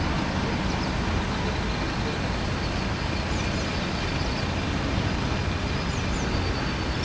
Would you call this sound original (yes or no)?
yes